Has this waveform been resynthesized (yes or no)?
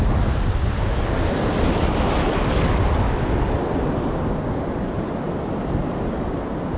no